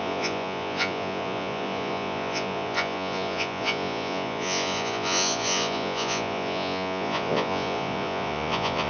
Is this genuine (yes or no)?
no